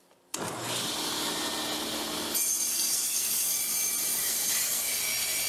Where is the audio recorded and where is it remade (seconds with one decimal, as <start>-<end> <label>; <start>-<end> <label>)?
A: 0.0-2.7 recorded; 2.7-3.6 remade; 3.6-4.2 recorded; 4.2-5.0 remade; 5.0-5.5 recorded